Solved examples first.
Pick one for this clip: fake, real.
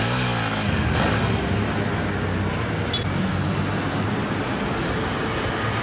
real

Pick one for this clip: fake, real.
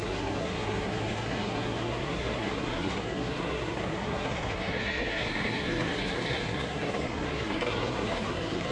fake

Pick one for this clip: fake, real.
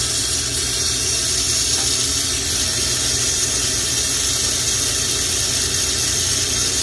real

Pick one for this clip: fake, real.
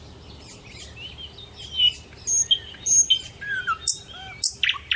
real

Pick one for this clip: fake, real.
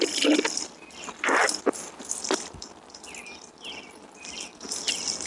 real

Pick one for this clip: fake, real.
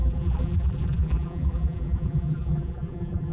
fake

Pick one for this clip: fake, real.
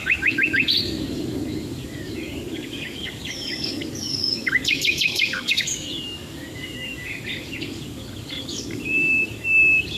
fake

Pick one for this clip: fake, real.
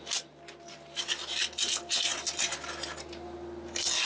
real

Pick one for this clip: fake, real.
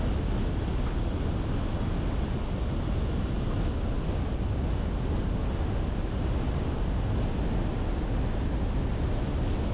real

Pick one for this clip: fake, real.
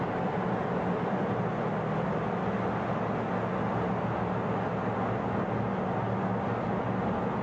real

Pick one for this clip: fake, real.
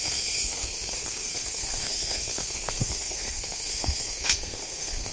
fake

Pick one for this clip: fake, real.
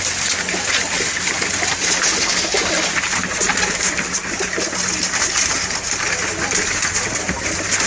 real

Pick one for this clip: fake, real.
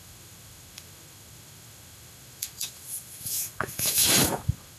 fake